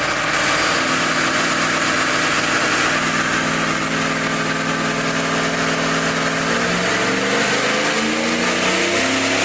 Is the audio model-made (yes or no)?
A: no